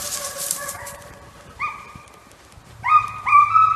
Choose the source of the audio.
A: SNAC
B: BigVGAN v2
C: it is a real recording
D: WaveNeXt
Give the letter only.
B